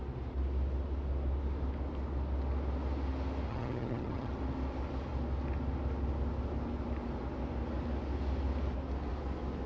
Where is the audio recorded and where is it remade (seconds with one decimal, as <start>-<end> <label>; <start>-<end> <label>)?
0.0-3.5 recorded; 3.5-4.3 remade; 4.3-9.7 recorded